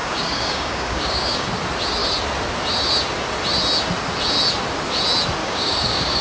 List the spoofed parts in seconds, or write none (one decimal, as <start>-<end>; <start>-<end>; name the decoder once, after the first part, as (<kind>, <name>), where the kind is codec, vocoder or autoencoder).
0.0-1.5 (codec, DAC); 5.4-6.2